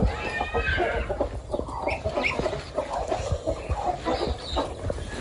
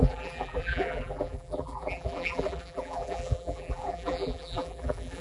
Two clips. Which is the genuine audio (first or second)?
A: first